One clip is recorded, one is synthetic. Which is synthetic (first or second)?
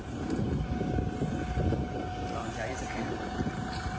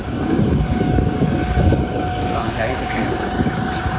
second